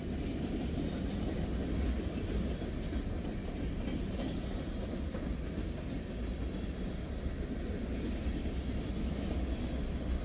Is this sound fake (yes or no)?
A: no